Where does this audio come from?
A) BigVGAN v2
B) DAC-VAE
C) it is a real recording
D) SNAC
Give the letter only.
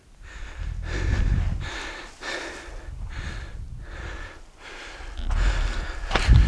C